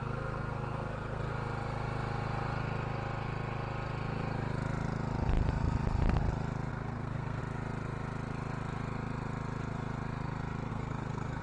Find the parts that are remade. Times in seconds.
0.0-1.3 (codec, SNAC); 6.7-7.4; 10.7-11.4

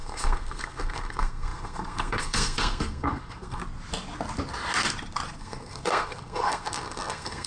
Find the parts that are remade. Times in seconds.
0.0-3.6 (codec, SNAC); 5.4-7.5

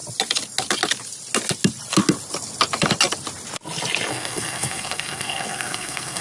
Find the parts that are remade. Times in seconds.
4.1-6.2 (codec, SNAC)

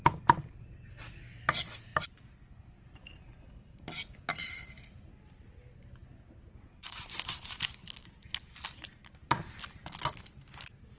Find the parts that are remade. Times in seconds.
none

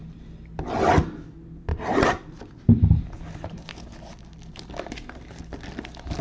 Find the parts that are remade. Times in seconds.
none

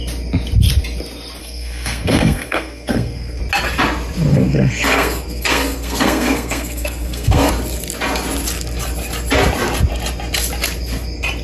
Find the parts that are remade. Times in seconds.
1.4-3.4 (codec, SNAC); 4.3-7.5

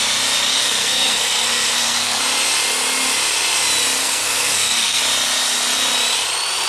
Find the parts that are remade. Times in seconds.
0.5-2.2 (codec, SNAC); 4.0-5.0

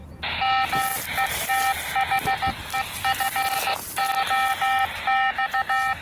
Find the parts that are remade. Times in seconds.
none